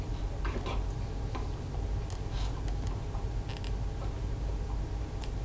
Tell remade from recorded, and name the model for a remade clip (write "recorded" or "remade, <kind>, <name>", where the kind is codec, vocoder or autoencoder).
recorded